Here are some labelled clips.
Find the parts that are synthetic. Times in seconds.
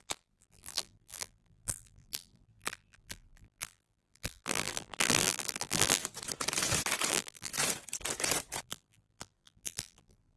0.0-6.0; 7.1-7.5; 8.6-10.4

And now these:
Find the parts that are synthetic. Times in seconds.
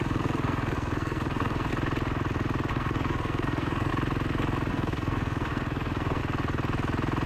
0.0-1.7; 2.7-3.9; 4.7-6.2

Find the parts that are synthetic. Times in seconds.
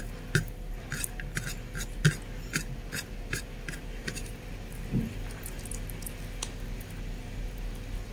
none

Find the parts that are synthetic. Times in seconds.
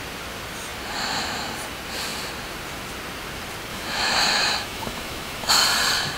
3.7-5.5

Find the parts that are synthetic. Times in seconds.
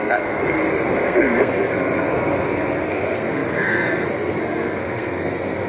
0.0-5.7